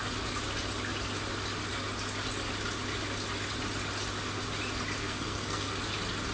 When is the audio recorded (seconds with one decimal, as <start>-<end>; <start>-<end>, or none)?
0.0-5.0; 5.8-6.3